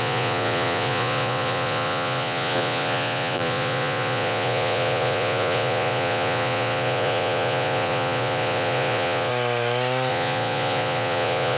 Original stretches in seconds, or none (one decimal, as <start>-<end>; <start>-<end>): 9.3-10.1